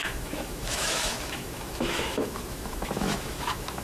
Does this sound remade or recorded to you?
remade